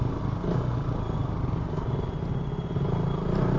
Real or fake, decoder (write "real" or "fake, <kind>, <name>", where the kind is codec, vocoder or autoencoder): real